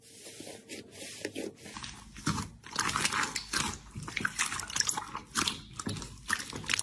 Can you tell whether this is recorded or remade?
recorded